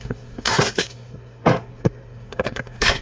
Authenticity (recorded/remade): remade